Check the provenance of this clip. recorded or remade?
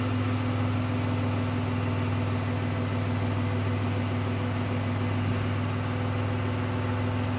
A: recorded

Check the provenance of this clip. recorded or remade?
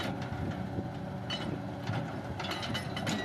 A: recorded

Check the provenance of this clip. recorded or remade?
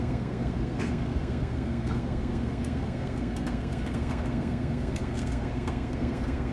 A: remade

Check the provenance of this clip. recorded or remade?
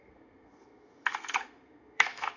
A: remade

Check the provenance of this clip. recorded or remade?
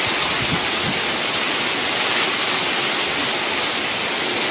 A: recorded